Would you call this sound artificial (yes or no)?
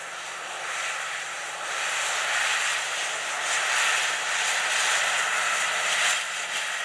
no